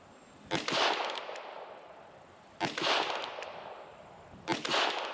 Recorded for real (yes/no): yes